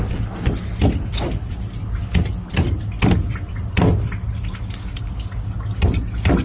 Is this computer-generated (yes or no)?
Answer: no